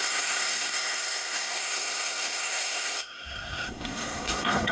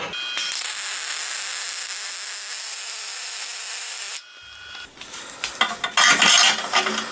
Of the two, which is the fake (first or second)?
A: first